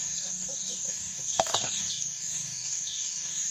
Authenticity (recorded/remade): remade